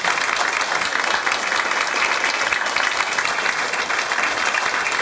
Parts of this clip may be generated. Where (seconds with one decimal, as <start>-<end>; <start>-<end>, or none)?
none